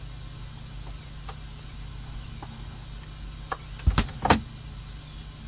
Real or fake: real